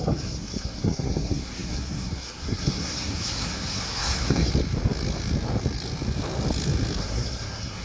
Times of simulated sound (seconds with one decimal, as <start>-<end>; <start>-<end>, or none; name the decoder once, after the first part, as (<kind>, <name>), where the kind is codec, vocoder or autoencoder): 0.0-4.5 (codec, SNAC); 7.0-7.8